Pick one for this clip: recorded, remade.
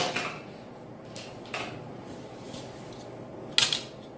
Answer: recorded